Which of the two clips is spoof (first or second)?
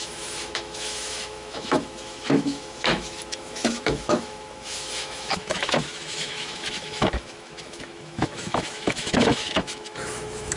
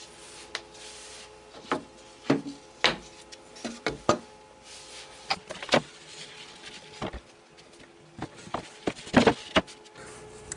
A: first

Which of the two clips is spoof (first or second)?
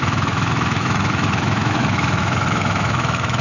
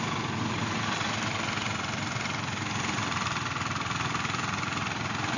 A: first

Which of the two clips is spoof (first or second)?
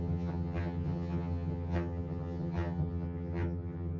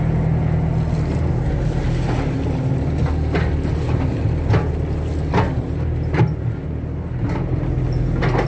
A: first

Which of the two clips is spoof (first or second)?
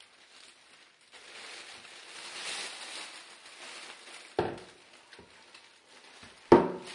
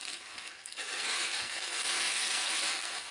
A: second